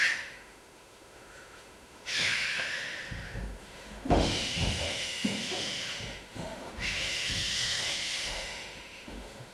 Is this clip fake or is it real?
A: fake